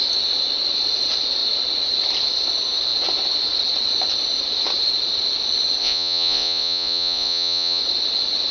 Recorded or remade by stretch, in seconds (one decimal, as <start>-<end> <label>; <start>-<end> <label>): 0.0-5.8 recorded; 5.8-7.8 remade; 7.8-8.5 recorded